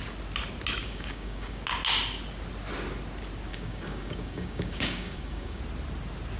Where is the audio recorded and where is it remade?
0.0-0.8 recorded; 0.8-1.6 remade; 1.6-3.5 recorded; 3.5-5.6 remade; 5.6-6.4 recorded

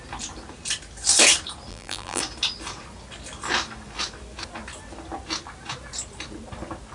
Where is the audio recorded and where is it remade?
0.0-1.7 recorded; 1.7-2.2 remade; 2.2-6.9 recorded

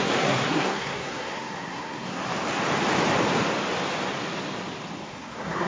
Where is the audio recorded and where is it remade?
0.0-2.2 remade; 2.2-5.1 recorded; 5.1-5.7 remade

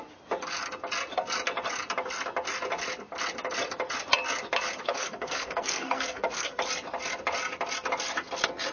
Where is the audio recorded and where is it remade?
0.0-4.8 recorded; 4.8-6.6 remade; 6.6-8.7 recorded

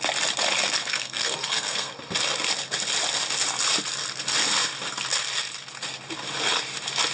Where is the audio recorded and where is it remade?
0.0-0.8 recorded; 0.8-1.9 remade; 1.9-7.1 recorded

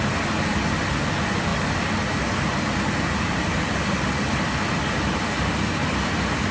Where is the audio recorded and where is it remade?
0.0-6.5 recorded